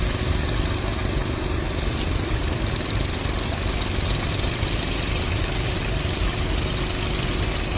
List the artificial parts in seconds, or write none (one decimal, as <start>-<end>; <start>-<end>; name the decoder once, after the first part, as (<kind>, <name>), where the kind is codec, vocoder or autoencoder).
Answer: 1.0-4.6 (vocoder, BigVGAN v2)